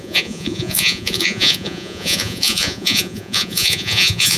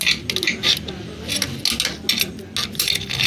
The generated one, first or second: first